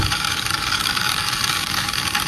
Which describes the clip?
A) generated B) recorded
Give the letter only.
A